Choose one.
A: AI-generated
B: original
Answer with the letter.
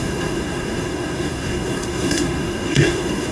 A